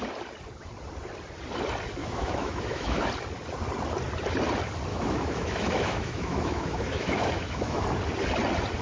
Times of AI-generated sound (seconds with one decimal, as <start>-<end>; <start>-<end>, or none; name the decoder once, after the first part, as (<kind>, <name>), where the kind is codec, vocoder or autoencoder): 2.0-3.0 (autoencoder, DAC-VAE); 4.9-7.8